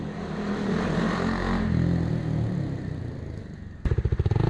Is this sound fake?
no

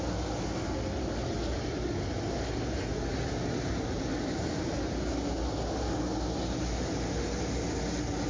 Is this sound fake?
no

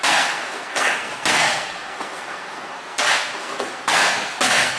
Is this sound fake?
yes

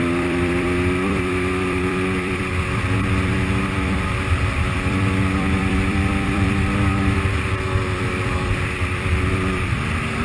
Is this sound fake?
yes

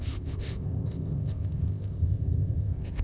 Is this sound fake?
yes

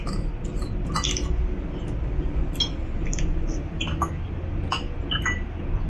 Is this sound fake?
no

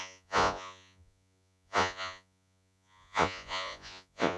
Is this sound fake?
yes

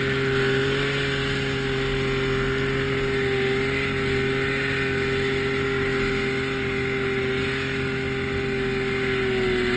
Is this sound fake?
no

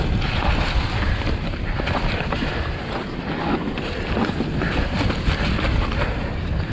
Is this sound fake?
yes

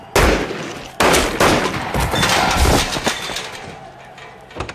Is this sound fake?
no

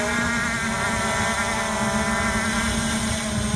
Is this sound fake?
no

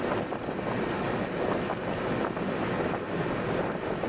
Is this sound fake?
no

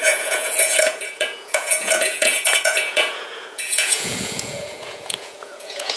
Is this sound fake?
yes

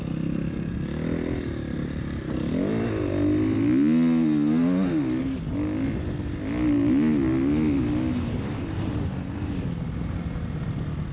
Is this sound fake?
no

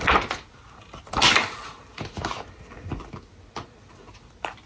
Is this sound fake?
no